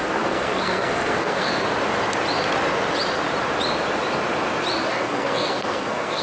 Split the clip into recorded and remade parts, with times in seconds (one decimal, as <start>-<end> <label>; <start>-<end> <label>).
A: 0.0-1.5 remade; 1.5-4.9 recorded; 4.9-6.2 remade